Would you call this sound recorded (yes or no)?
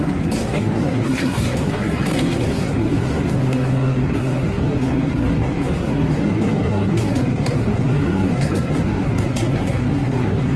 no